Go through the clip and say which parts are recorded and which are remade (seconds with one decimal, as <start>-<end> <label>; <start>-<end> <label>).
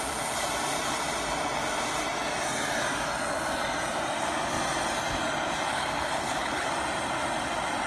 0.0-5.7 recorded; 5.7-6.7 remade; 6.7-7.9 recorded